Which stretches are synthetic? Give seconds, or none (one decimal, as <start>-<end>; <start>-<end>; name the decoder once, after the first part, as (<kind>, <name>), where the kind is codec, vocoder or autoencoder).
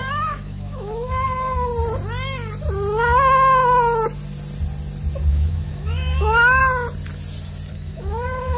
0.0-1.7 (autoencoder, DAC-VAE); 5.3-6.6; 7.7-8.6